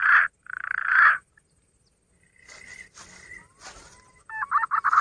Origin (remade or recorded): recorded